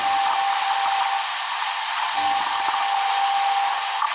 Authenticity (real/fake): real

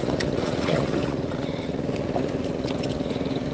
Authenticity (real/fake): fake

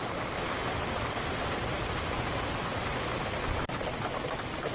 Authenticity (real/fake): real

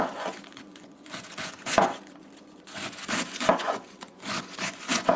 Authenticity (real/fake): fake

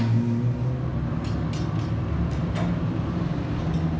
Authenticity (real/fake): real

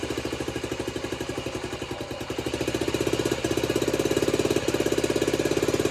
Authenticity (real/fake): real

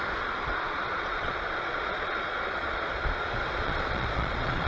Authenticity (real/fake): fake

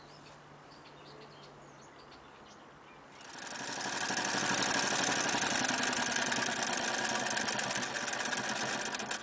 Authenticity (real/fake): real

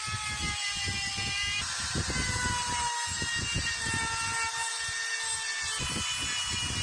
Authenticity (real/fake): real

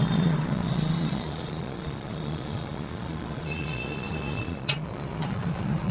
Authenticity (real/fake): fake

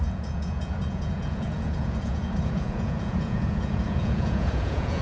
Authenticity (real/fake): fake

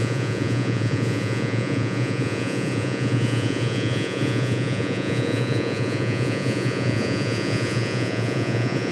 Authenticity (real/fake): fake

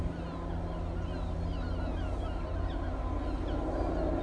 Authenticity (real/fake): real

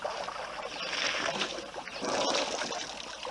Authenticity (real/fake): real